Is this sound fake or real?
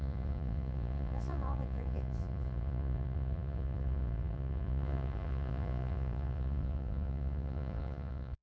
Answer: fake